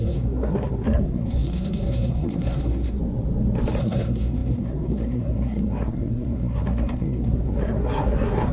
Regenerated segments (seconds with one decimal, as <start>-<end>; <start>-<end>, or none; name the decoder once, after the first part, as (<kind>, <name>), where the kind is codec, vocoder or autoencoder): 0.0-3.0 (codec, SNAC); 3.8-8.5